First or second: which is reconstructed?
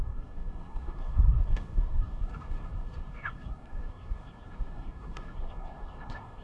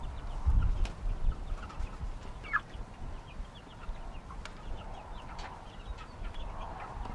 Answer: first